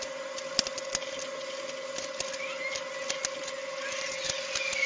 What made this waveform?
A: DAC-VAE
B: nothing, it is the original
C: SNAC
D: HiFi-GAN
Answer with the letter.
B